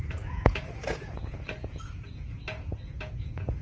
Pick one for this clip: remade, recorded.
remade